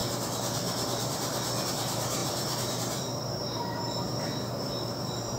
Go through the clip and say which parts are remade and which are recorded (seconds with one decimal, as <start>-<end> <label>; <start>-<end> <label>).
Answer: 0.0-1.7 recorded; 1.7-5.4 remade